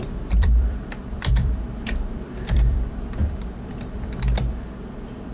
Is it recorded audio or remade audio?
remade